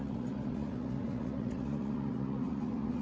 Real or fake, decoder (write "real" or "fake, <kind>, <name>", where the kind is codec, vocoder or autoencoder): fake, vocoder, Vocos